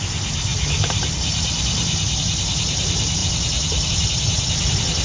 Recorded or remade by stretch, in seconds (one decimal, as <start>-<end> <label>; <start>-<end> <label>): 0.0-0.5 recorded; 0.5-2.2 remade; 2.2-5.0 recorded